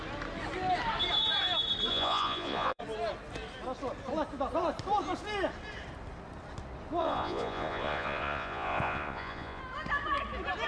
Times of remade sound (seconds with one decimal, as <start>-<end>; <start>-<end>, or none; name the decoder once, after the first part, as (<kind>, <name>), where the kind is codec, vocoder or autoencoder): 1.9-2.8 (vocoder, Vocos); 7.0-9.6